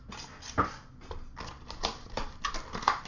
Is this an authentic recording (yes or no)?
yes